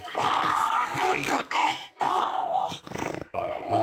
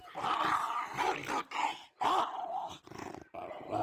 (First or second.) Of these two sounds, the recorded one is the second